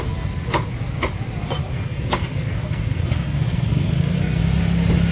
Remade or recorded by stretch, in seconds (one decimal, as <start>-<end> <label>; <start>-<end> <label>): 0.0-1.6 recorded; 1.6-4.4 remade; 4.4-5.1 recorded